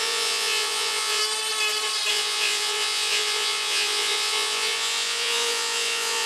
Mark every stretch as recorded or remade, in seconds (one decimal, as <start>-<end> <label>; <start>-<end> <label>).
0.0-1.2 remade; 1.2-2.1 recorded; 2.1-6.3 remade